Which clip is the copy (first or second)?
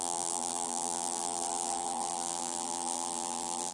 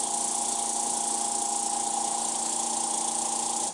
first